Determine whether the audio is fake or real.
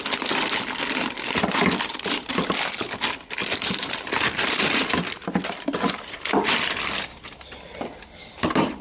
real